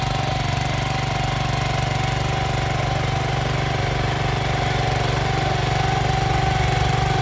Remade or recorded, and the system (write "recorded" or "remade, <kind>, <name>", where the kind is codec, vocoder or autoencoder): recorded